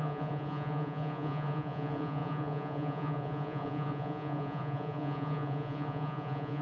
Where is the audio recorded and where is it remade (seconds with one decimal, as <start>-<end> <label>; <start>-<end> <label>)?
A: 0.0-6.6 remade